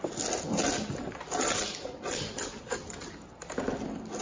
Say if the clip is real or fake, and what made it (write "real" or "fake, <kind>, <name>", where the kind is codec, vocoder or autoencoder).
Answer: real